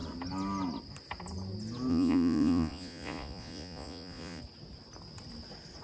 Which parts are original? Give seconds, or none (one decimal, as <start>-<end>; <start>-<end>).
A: 0.0-1.9; 4.4-5.8